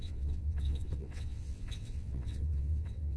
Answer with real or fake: fake